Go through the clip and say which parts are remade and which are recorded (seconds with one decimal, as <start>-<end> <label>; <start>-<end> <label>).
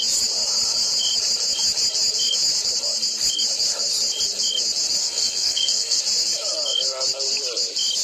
0.0-5.0 recorded; 5.0-6.0 remade; 6.0-8.0 recorded